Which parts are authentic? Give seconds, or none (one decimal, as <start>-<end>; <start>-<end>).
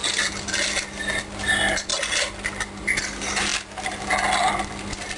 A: 0.0-5.2